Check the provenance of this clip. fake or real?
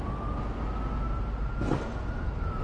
real